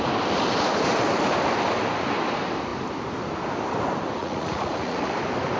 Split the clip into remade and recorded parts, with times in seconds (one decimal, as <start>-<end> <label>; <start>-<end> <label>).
0.0-4.2 recorded; 4.2-5.0 remade; 5.0-5.6 recorded